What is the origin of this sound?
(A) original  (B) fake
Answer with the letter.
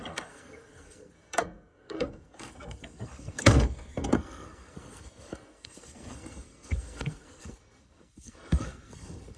B